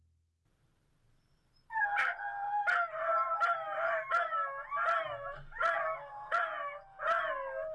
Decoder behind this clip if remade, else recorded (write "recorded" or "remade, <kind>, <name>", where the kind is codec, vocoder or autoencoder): recorded